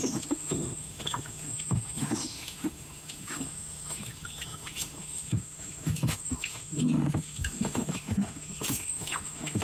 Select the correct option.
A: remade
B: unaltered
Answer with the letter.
A